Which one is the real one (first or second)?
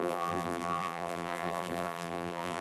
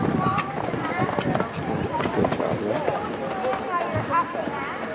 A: second